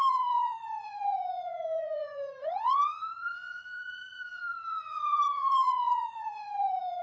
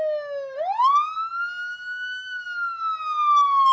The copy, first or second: first